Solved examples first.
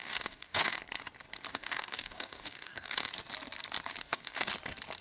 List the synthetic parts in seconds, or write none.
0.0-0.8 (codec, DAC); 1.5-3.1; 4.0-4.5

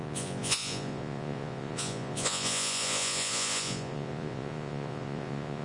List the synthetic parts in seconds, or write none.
0.0-5.6 (vocoder, Vocos)

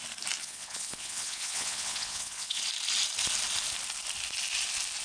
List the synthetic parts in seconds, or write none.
0.4-2.6 (vocoder, WaveNeXt)

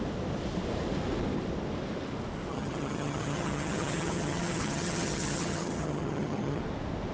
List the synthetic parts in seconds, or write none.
2.5-6.6 (vocoder, HiFi-GAN)

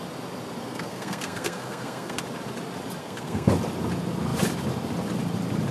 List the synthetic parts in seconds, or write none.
0.6-2.2 (codec, SNAC); 3.0-3.5